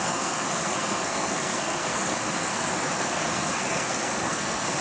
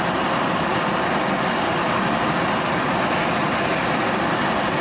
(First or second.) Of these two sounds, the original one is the second